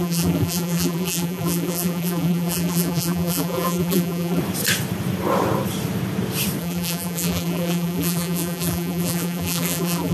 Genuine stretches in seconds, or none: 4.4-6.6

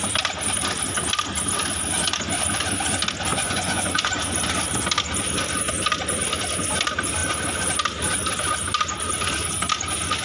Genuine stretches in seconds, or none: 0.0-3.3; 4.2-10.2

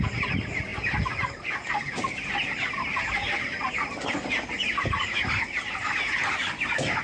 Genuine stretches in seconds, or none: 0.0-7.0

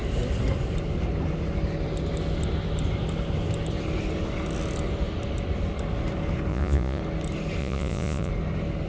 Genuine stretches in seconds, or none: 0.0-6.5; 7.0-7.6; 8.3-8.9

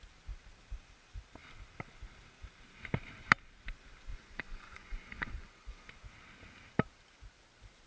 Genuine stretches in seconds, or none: 0.0-4.1; 5.9-7.9

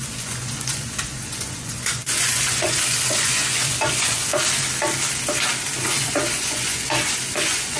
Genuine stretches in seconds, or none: 4.3-5.8

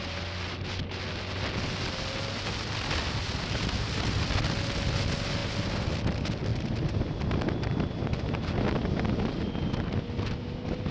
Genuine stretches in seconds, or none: 0.0-5.4; 6.0-6.5; 7.2-10.9

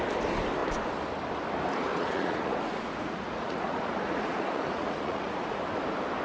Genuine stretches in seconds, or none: 0.0-1.9; 5.6-6.2